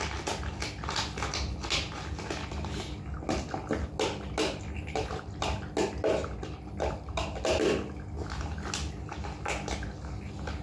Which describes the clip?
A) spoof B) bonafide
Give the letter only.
B